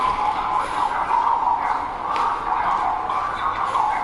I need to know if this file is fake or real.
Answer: real